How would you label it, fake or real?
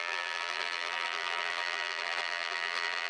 fake